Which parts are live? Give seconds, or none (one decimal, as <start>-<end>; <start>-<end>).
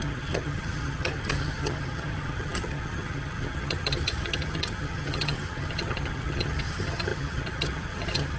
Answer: none